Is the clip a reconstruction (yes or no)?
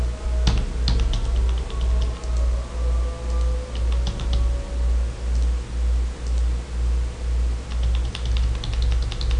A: no